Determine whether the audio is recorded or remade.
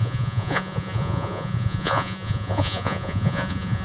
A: remade